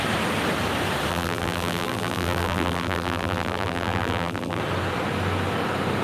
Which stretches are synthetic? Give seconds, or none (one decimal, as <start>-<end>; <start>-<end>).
1.1-4.6